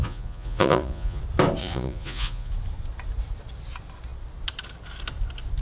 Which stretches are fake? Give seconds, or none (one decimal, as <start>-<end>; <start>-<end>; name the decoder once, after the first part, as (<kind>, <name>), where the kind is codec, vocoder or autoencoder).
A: 0.0-1.2 (vocoder, Vocos); 1.6-2.5